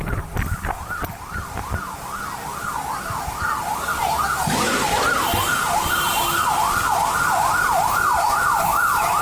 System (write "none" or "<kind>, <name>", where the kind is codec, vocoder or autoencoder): none